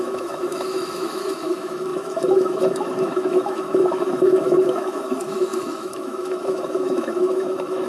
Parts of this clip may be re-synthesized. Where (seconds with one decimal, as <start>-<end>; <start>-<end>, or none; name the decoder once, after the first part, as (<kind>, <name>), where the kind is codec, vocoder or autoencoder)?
0.0-7.9 (autoencoder, DAC-VAE)